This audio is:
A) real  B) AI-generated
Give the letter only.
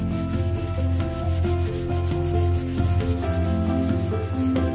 A